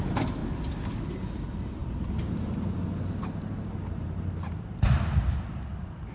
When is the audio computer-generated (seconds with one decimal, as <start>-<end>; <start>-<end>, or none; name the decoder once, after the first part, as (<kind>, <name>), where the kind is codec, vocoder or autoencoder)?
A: none